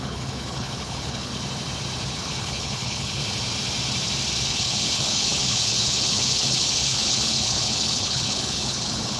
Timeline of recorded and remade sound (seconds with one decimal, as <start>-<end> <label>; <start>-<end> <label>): 0.0-1.3 remade; 1.3-2.1 recorded; 2.1-3.2 remade; 3.2-4.5 recorded; 4.5-9.2 remade